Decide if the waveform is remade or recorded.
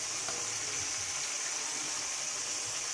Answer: recorded